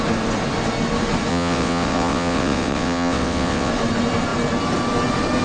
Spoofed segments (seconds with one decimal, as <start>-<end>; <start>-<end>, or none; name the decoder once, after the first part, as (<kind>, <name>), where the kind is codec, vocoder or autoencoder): 1.3-3.7 (vocoder, WaveNeXt)